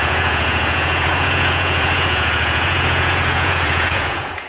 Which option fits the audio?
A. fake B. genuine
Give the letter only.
A